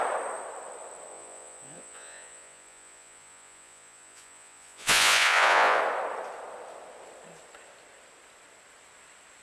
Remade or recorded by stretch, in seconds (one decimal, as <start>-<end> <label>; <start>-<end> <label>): 0.0-1.1 recorded; 1.1-5.8 remade; 5.8-9.4 recorded